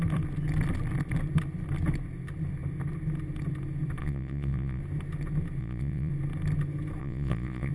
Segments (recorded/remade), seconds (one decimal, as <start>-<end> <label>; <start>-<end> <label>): 0.0-4.0 recorded; 4.0-4.8 remade; 4.8-5.6 recorded; 5.6-6.1 remade; 6.1-7.0 recorded; 7.0-7.7 remade